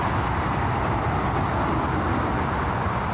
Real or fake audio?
real